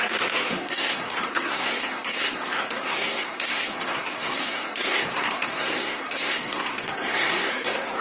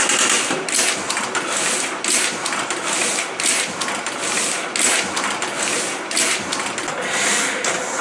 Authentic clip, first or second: second